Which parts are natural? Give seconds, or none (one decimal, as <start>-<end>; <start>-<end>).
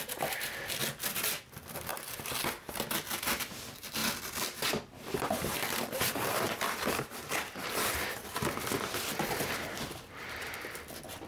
0.8-1.5; 1.9-3.2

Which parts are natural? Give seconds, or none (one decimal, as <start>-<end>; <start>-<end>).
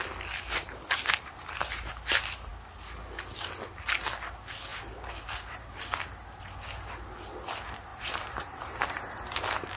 0.0-1.4; 2.5-4.7; 5.9-7.9; 9.4-9.8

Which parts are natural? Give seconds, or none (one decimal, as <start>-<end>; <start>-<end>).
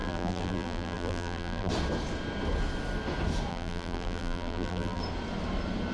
1.7-3.5; 5.0-5.9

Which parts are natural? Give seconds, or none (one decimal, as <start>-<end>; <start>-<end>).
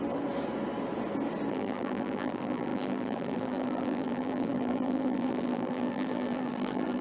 0.0-1.5